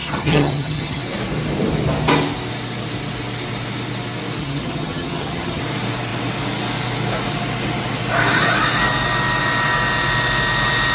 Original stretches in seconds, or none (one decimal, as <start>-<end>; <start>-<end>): 1.0-4.4; 5.6-10.9